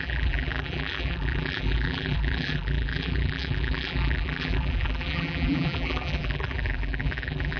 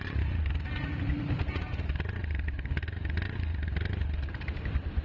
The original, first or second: second